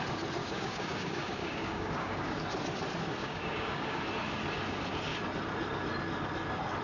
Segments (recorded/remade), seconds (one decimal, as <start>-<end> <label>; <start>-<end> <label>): 0.0-0.4 recorded; 0.4-2.4 remade; 2.4-3.2 recorded; 3.2-4.0 remade; 4.0-6.8 recorded